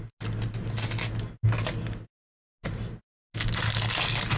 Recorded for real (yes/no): yes